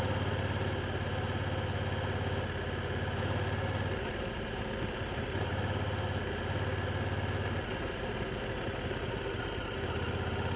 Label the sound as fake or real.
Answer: real